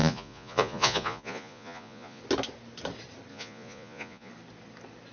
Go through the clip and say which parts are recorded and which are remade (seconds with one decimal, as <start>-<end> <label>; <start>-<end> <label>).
0.0-2.2 remade; 2.2-3.3 recorded; 3.3-4.3 remade; 4.3-5.1 recorded